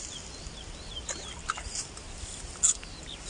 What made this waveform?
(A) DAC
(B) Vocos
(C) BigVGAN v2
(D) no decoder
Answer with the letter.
D